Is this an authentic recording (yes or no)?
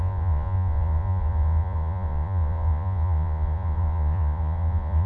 no